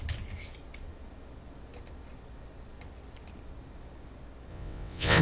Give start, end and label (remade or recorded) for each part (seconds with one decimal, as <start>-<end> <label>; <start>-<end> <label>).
0.0-4.5 recorded; 4.5-5.2 remade